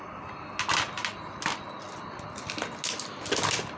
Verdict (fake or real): real